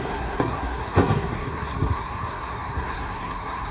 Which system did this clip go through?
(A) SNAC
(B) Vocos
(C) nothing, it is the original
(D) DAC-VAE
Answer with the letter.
A